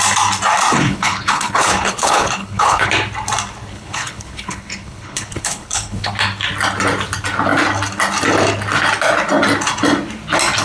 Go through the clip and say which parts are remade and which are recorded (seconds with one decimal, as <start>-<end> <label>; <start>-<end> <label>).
0.0-0.7 recorded; 0.7-2.9 remade; 2.9-3.7 recorded; 3.7-6.1 remade; 6.1-10.6 recorded